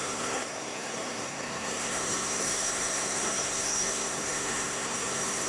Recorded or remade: remade